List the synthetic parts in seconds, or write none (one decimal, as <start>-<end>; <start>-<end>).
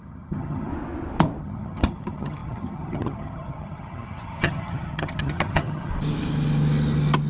0.0-0.7; 1.4-5.9